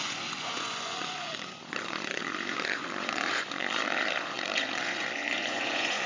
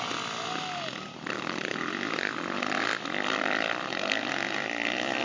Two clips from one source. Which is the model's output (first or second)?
first